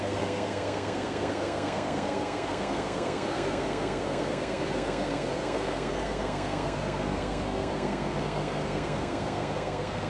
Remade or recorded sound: remade